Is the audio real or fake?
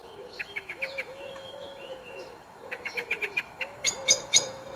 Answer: fake